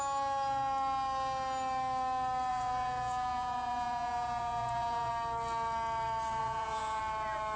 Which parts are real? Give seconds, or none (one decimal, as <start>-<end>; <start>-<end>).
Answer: 0.0-2.5; 5.1-6.4; 7.0-7.6